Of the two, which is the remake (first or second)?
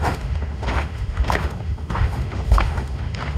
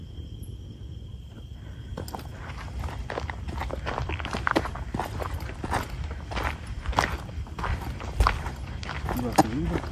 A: first